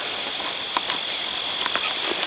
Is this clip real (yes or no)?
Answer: yes